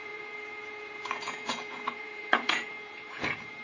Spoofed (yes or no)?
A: yes